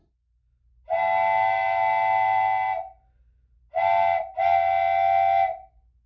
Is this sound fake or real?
real